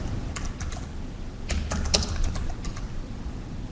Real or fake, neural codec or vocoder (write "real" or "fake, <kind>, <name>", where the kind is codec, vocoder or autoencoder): real